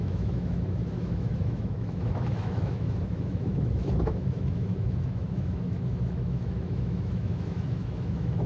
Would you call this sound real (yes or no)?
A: no